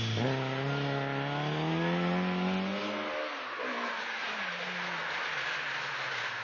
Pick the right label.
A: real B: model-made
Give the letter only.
A